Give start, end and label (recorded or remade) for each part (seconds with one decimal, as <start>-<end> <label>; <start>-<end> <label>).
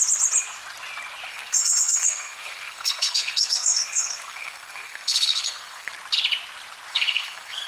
0.0-1.3 recorded; 1.3-5.9 remade; 5.9-6.9 recorded; 6.9-7.7 remade